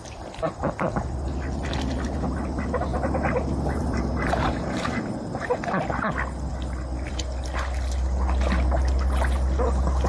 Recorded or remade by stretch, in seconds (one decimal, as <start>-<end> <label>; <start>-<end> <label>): 0.0-2.9 recorded; 2.9-5.7 remade; 5.7-10.1 recorded